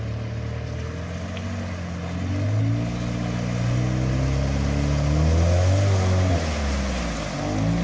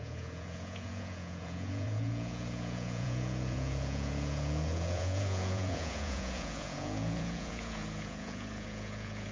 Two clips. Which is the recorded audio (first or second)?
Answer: first